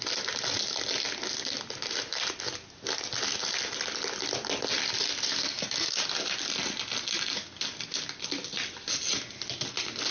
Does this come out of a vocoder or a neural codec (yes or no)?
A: no